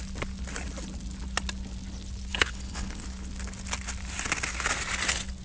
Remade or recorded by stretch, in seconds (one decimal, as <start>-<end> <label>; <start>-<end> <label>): 0.0-2.3 recorded; 2.3-3.0 remade; 3.0-5.4 recorded